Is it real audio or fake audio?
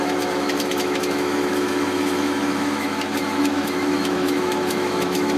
fake